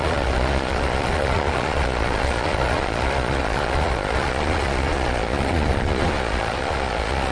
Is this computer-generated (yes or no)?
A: yes